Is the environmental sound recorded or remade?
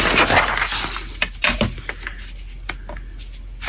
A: recorded